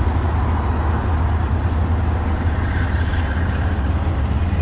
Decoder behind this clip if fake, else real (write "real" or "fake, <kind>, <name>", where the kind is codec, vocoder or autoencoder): real